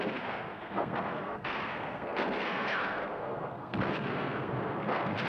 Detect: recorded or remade remade